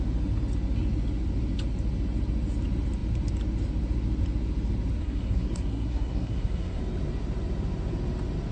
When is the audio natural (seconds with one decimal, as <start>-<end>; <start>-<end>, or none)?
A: 0.0-5.0; 6.8-8.5